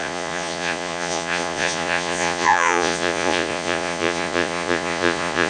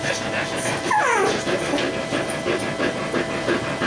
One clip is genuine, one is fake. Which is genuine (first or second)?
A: second